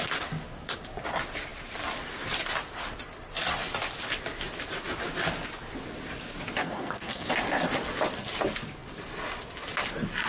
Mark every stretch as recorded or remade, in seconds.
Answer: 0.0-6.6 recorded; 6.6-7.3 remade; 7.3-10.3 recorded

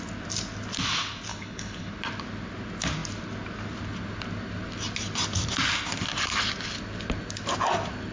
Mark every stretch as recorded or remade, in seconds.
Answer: 0.0-1.3 recorded; 1.3-1.9 remade; 1.9-8.1 recorded

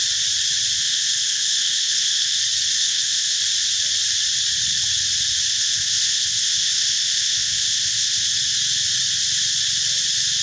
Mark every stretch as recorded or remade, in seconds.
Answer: 0.0-0.8 recorded; 0.8-2.4 remade; 2.4-2.8 recorded; 2.8-3.4 remade; 3.4-5.5 recorded; 5.5-8.2 remade; 8.2-10.4 recorded